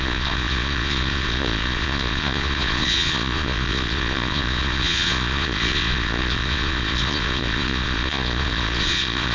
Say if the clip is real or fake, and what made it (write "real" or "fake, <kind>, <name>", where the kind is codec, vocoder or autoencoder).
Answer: fake, vocoder, Vocos